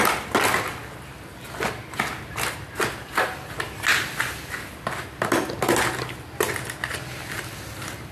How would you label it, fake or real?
real